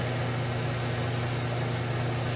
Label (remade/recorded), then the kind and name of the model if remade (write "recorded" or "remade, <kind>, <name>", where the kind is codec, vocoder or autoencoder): recorded